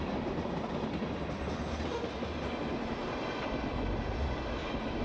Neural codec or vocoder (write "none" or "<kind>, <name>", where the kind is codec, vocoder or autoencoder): none